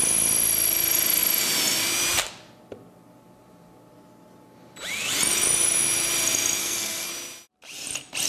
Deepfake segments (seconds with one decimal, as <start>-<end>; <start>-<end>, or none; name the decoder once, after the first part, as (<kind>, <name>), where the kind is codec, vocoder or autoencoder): 6.6-7.1 (codec, SNAC)